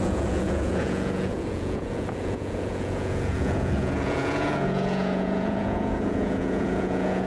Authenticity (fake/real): fake